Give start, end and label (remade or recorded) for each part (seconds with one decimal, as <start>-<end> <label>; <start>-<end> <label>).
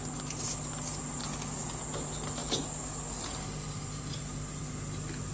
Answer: 0.0-1.2 recorded; 1.2-1.8 remade; 1.8-5.3 recorded